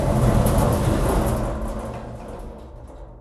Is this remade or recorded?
recorded